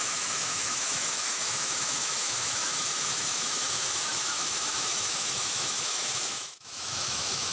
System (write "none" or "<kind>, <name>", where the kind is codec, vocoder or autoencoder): autoencoder, DAC-VAE